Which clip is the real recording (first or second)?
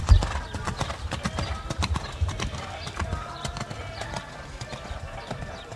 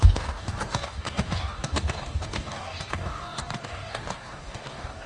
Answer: first